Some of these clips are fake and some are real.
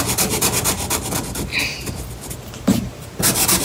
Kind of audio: real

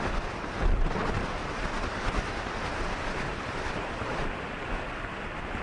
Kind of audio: fake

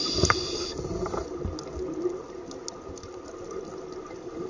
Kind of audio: real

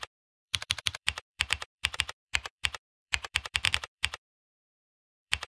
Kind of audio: fake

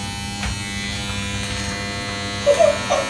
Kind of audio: real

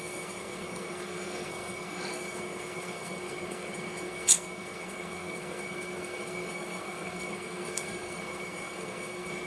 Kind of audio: fake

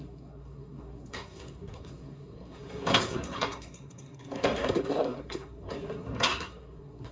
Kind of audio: fake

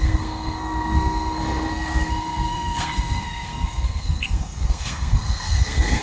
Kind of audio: fake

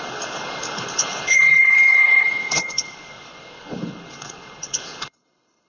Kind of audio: fake